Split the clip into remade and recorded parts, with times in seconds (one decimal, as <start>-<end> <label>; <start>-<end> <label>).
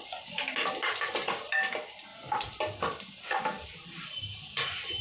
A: 0.0-5.0 recorded